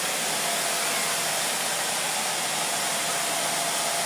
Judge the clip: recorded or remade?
recorded